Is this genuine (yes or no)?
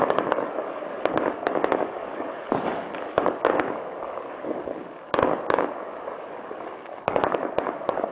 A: no